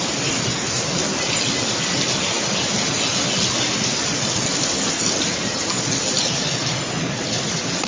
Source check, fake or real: real